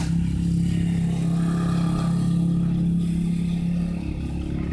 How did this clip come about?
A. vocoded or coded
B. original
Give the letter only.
B